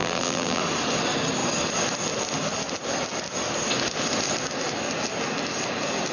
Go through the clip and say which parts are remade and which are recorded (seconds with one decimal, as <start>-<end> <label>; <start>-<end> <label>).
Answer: 0.0-0.6 remade; 0.6-6.1 recorded